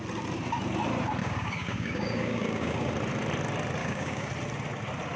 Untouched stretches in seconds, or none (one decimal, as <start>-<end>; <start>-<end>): 0.0-1.2; 2.9-3.8; 4.3-5.2